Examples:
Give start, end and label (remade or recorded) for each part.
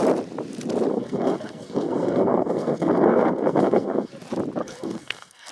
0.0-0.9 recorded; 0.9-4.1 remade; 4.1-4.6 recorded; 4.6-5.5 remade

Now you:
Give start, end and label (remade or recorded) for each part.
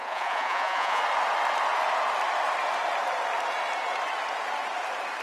0.0-1.0 remade; 1.0-5.2 recorded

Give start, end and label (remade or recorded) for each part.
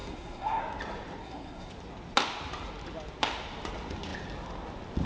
0.0-0.6 remade; 0.6-1.2 recorded; 1.2-1.7 remade; 1.7-5.1 recorded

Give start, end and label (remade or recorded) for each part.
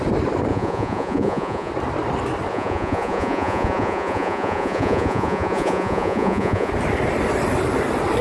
0.0-0.5 recorded; 0.5-1.7 remade; 1.7-2.5 recorded; 2.5-6.7 remade; 6.7-8.2 recorded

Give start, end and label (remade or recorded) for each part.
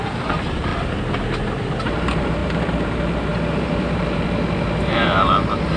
0.0-0.7 remade; 0.7-1.3 recorded; 1.3-5.8 remade